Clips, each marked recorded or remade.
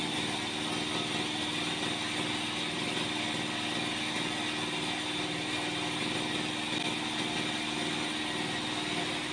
recorded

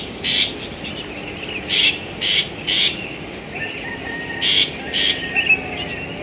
recorded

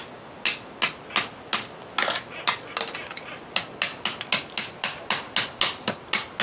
recorded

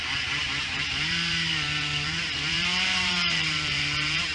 remade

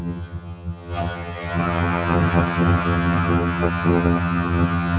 remade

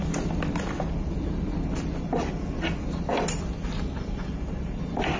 recorded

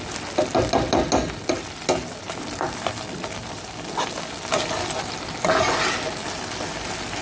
recorded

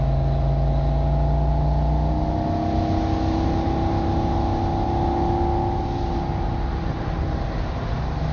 recorded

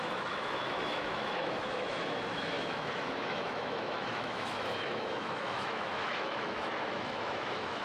remade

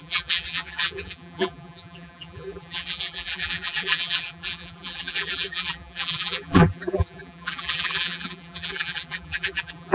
remade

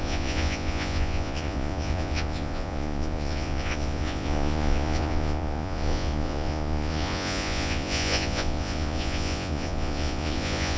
remade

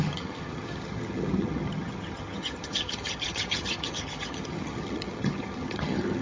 remade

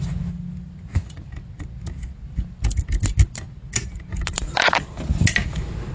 recorded